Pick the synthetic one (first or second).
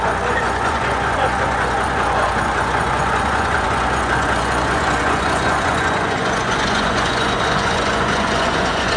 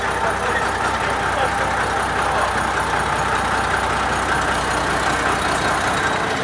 first